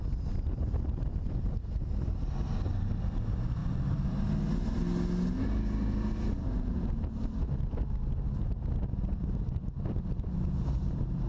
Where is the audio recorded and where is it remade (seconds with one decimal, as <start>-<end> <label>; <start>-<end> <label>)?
0.0-3.6 recorded; 3.6-4.3 remade; 4.3-11.3 recorded